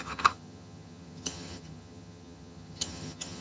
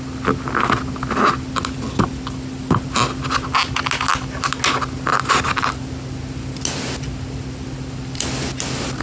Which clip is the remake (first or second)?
first